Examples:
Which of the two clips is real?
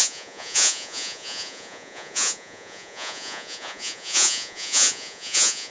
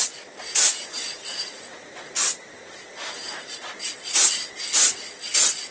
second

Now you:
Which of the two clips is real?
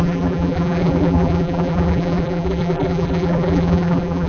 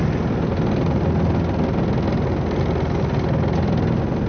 second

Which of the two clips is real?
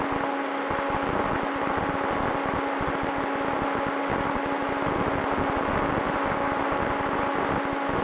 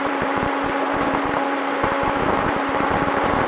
first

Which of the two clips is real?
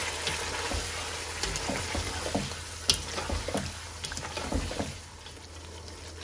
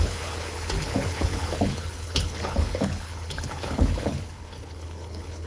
first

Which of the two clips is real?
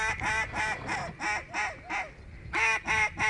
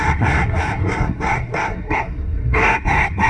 first